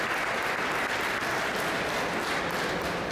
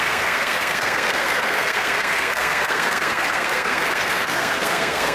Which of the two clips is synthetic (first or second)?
second